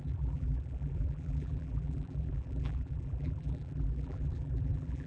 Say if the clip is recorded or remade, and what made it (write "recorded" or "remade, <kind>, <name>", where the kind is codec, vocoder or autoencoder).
remade, vocoder, BigVGAN v2